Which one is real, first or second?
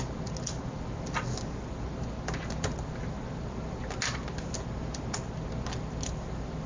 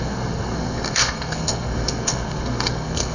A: first